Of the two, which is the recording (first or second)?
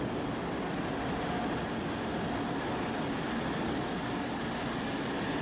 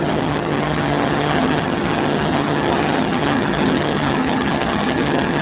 first